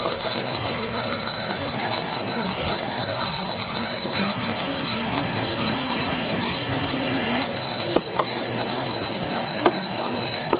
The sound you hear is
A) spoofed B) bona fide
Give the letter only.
A